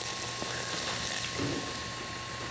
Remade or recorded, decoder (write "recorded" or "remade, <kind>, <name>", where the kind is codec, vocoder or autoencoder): recorded